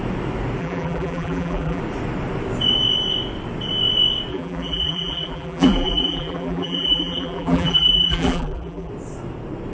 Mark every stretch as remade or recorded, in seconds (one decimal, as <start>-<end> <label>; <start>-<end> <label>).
0.0-0.6 recorded; 0.6-1.8 remade; 1.8-4.3 recorded; 4.3-8.9 remade; 8.9-9.7 recorded